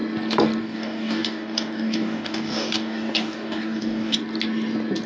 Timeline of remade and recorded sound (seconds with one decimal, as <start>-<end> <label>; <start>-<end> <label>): 0.0-0.6 recorded; 0.6-4.2 remade; 4.2-5.1 recorded